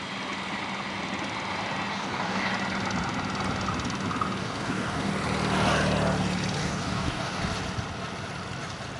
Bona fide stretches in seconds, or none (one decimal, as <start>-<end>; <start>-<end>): 0.0-1.9; 2.5-4.4; 5.1-6.6; 7.4-9.0